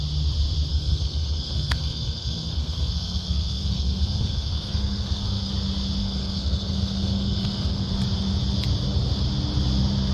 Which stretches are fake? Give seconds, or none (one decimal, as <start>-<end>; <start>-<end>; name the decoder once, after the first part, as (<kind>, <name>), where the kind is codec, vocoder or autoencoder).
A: 0.7-5.5 (codec, SNAC); 6.0-7.9